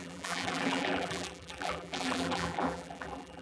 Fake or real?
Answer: fake